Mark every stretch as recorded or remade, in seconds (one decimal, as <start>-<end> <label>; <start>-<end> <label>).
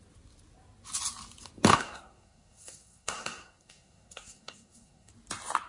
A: 0.0-1.7 recorded; 1.7-5.1 remade; 5.1-5.7 recorded